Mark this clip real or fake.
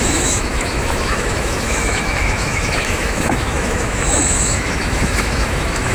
fake